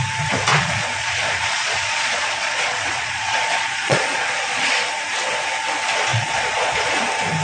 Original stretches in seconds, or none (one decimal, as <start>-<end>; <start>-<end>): 0.0-0.5; 4.7-6.1; 7.0-7.4

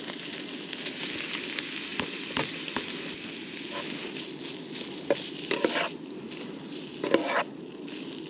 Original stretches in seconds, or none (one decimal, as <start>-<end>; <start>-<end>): 0.0-8.3